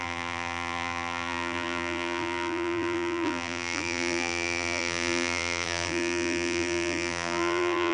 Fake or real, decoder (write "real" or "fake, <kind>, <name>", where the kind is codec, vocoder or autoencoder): fake, vocoder, BigVGAN v2